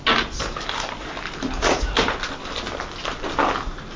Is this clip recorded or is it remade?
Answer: recorded